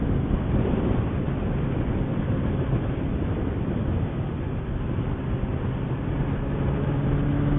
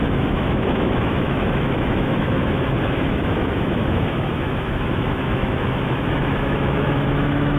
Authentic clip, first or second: first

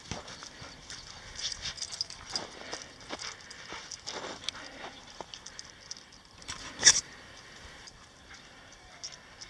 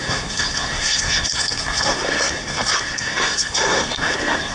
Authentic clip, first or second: first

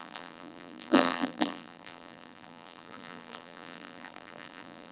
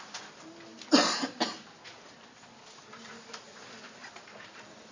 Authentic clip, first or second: second